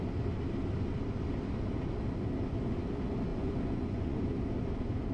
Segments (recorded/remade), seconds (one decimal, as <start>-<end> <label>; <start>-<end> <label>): 0.0-3.3 recorded; 3.3-4.2 remade; 4.2-5.1 recorded